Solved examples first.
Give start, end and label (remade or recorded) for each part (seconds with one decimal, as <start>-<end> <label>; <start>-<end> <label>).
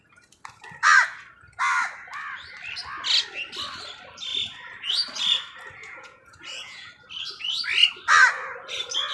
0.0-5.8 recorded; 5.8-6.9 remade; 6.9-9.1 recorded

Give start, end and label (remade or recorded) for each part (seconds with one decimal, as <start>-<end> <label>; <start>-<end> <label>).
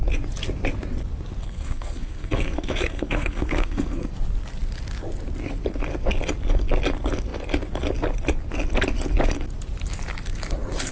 0.0-1.4 recorded; 1.4-4.1 remade; 4.1-10.9 recorded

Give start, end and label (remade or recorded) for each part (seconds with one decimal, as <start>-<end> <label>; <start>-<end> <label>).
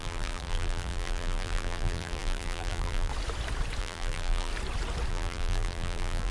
0.0-3.1 remade; 3.1-3.8 recorded; 3.8-4.5 remade; 4.5-5.1 recorded; 5.1-6.3 remade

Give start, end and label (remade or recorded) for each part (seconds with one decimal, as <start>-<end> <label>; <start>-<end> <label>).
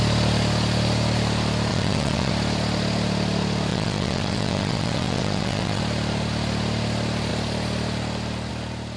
0.0-1.7 recorded; 1.7-2.3 remade; 2.3-3.7 recorded; 3.7-5.8 remade; 5.8-9.0 recorded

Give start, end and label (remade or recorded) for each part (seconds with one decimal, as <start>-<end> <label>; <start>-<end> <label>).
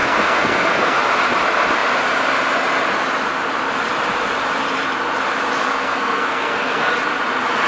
0.0-1.0 remade; 1.0-5.6 recorded; 5.6-6.9 remade; 6.9-7.7 recorded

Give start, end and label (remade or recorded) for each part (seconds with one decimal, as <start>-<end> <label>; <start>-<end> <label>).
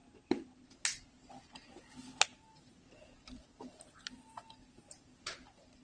0.0-5.8 recorded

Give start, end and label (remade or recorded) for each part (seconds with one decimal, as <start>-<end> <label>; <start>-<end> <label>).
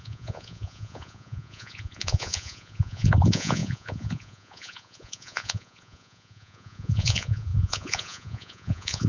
0.0-9.1 remade